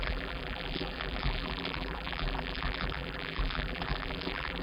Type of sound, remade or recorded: remade